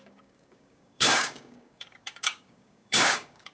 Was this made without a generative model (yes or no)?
no